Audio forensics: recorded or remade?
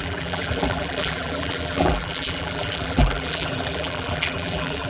remade